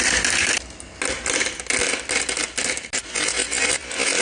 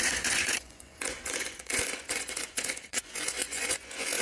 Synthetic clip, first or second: second